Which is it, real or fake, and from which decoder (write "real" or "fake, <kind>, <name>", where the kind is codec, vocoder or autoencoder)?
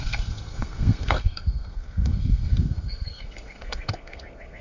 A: fake, codec, SNAC